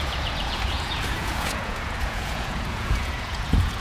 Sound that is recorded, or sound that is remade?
remade